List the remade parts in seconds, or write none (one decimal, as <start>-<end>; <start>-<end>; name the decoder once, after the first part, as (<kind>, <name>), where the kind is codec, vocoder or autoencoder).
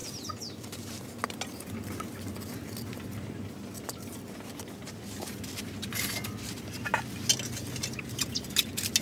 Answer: none